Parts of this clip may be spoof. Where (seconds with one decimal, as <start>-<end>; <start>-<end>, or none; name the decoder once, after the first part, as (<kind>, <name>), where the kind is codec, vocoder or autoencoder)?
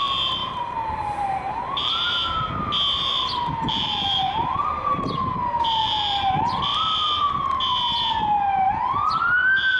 0.4-1.9 (vocoder, BigVGAN v2); 3.6-5.0; 5.8-6.3